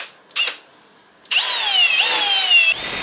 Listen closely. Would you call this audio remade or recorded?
recorded